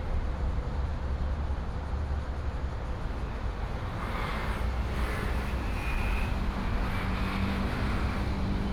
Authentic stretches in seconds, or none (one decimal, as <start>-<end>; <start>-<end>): 0.0-8.7